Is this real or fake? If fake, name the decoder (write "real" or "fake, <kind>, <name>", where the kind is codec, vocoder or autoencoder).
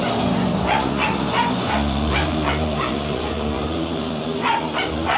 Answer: fake, vocoder, Vocos